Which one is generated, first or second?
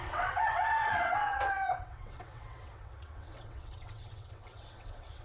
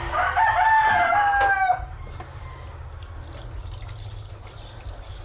first